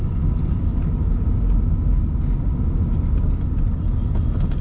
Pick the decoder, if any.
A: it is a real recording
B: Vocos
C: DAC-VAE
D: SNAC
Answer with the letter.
A